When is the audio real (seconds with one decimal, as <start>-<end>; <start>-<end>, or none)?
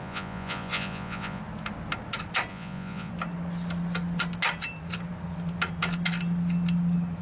1.4-2.5; 3.1-7.2